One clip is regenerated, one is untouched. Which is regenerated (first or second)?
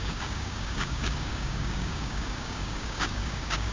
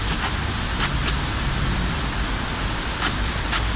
first